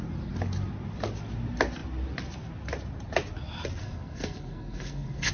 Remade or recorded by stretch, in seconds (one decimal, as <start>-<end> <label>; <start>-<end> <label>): 0.0-3.8 recorded; 3.8-5.3 remade